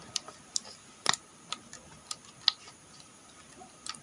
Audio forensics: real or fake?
real